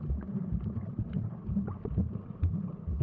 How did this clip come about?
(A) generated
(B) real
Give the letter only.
A